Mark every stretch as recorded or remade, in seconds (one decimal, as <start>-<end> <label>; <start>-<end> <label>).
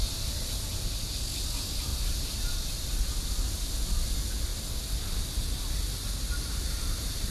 0.0-0.6 remade; 0.6-1.9 recorded; 1.9-2.5 remade; 2.5-7.3 recorded